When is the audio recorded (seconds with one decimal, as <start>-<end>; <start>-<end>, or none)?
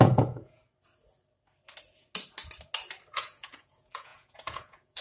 0.6-3.1